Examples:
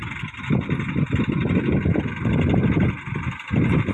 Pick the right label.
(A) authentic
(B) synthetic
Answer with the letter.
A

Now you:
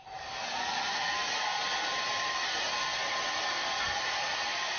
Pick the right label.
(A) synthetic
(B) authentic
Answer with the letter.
B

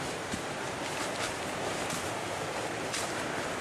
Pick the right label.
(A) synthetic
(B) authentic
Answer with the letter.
A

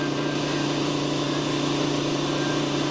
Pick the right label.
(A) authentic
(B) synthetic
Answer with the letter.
B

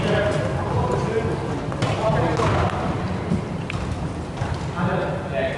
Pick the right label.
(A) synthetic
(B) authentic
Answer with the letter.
B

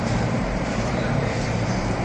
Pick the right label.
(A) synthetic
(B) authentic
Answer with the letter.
A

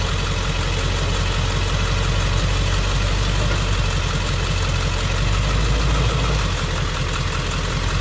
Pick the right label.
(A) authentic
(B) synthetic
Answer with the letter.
A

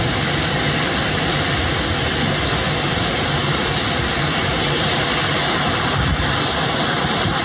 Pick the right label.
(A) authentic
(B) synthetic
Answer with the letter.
A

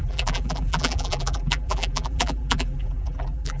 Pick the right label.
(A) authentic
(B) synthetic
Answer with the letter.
B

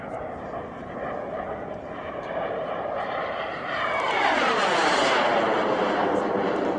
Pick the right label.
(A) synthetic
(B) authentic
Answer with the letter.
A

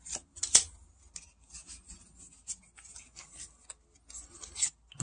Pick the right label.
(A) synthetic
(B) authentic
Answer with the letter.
B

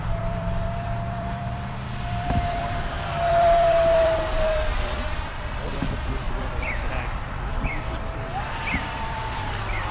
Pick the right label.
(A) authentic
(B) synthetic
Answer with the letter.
B